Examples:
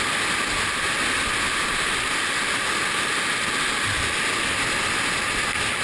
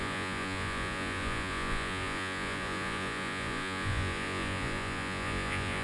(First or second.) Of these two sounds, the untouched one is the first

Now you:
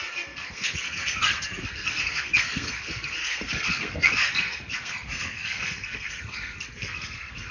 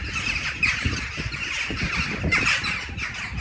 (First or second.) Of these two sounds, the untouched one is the second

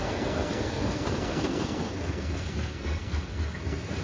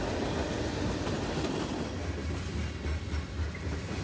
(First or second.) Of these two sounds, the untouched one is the second